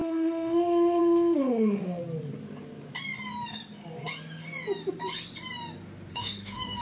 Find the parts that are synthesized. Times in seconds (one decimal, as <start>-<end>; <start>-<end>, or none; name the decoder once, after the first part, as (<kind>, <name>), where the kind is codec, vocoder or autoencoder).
0.0-2.0 (autoencoder, DAC-VAE); 6.1-6.8